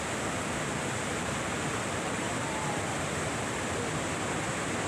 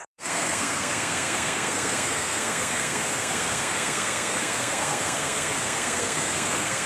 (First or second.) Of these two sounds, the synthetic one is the second